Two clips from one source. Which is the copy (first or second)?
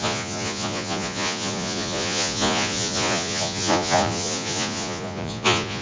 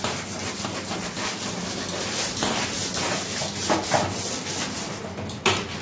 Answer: first